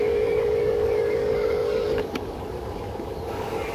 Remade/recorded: remade